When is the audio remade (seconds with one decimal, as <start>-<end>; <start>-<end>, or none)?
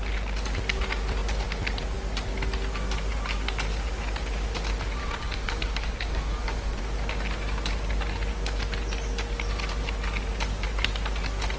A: 5.0-6.8